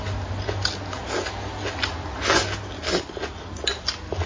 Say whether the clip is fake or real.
real